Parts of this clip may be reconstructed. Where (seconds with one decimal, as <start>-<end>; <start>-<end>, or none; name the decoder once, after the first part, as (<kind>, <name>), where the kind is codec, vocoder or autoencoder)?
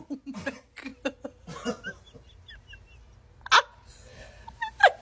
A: none